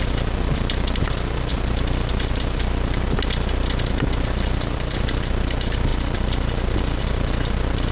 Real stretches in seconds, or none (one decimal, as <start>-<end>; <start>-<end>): 0.0-7.9